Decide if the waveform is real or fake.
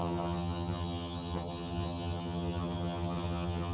fake